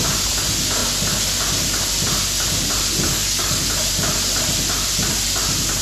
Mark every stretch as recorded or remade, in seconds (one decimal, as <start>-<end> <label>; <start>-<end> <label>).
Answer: 0.0-3.1 recorded; 3.1-3.7 remade; 3.7-5.8 recorded